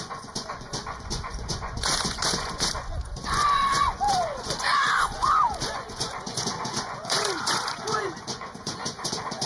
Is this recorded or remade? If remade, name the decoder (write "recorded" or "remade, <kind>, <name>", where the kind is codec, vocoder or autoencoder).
remade, vocoder, Vocos